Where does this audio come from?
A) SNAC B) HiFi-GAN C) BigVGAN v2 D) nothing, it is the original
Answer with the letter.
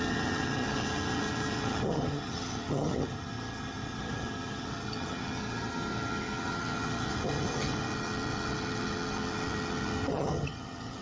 B